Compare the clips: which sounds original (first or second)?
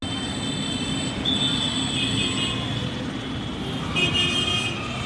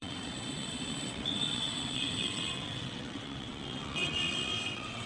first